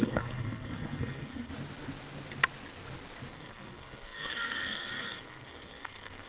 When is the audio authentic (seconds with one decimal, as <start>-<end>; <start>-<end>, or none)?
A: 1.5-3.3